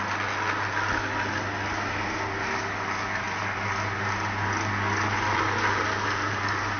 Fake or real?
real